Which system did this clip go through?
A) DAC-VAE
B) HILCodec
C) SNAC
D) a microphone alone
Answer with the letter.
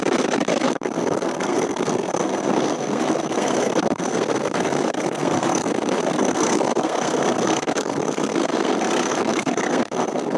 C